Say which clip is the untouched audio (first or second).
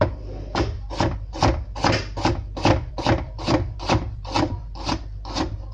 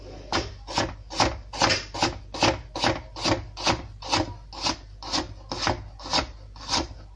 second